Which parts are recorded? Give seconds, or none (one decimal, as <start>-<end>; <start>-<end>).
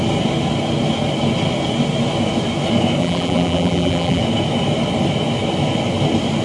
0.0-3.0; 4.2-6.4